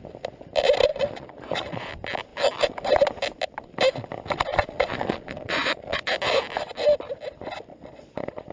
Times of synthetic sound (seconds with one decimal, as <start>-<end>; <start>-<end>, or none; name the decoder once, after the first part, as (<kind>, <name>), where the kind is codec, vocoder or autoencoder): 0.9-1.9 (vocoder, Vocos); 4.5-6.1; 7.7-8.5